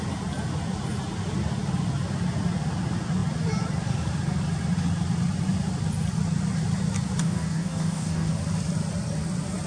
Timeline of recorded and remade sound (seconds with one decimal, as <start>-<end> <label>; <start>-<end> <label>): 0.0-7.2 recorded; 7.2-8.3 remade; 8.3-9.7 recorded